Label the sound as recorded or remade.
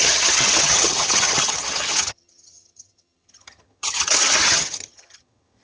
remade